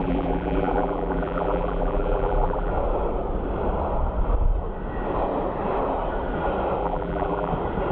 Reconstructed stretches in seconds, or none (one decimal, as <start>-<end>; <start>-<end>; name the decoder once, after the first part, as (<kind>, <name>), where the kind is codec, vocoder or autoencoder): 0.0-2.7 (vocoder, BigVGAN v2); 6.8-7.5